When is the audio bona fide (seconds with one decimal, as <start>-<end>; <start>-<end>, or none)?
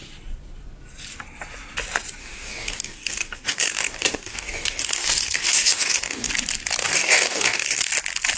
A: 0.0-2.2; 6.3-6.8; 7.9-8.4